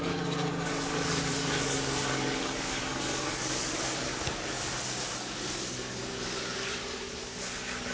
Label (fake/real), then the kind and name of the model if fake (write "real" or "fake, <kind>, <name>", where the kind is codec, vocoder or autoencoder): fake, codec, DAC